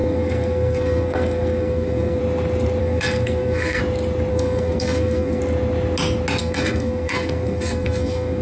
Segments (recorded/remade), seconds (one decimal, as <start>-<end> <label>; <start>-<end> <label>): 0.0-2.2 remade; 2.2-2.8 recorded; 2.8-3.8 remade; 3.8-4.3 recorded; 4.3-5.4 remade; 5.4-6.4 recorded; 6.4-8.4 remade